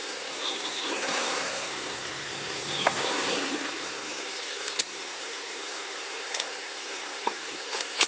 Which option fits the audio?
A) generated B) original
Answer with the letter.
A